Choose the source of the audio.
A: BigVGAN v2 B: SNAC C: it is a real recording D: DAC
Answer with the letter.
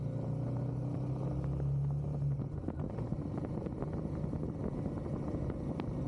C